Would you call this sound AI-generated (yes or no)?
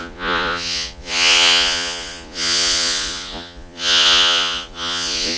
yes